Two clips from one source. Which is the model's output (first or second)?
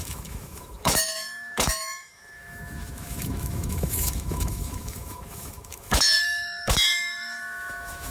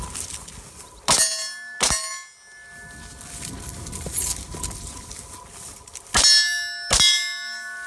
first